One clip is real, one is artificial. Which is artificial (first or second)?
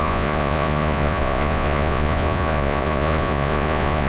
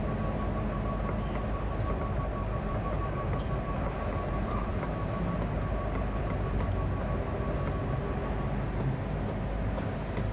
first